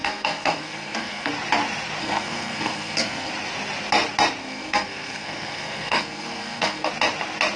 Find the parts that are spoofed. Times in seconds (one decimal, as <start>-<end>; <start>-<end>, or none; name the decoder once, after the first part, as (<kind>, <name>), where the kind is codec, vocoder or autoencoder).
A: 0.0-1.3 (codec, SNAC); 2.0-3.3; 4.4-6.9